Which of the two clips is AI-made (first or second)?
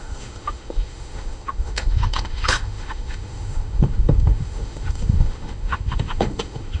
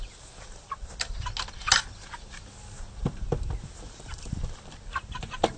first